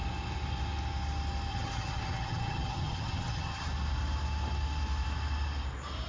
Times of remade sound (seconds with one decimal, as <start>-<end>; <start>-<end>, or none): 1.5-3.7